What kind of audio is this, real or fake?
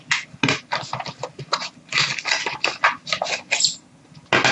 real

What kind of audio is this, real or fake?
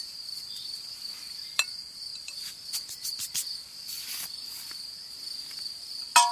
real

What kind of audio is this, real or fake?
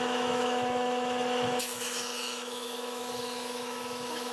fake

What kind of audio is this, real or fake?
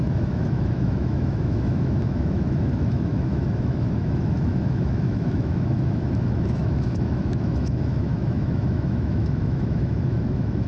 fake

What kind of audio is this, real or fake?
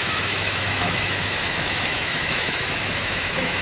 fake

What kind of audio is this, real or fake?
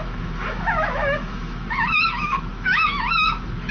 fake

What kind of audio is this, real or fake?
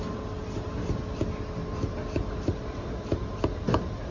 real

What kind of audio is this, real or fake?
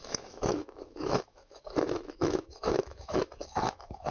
fake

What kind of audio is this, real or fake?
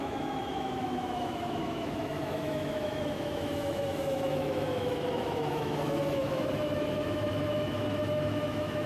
fake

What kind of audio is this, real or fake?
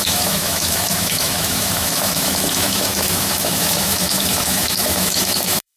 fake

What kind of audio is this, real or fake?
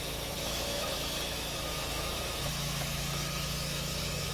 fake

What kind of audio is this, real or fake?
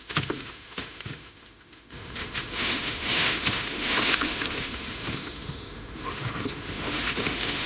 fake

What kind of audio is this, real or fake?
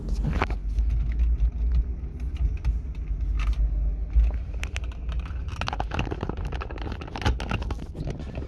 real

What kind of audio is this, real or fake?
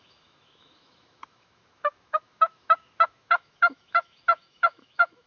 fake